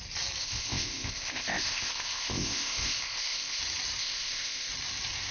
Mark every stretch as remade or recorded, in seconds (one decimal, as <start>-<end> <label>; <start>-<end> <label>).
0.0-0.4 recorded; 0.4-3.6 remade; 3.6-4.0 recorded; 4.0-4.7 remade; 4.7-5.3 recorded